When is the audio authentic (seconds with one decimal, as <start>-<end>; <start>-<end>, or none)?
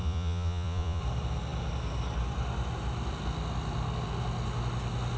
1.0-5.2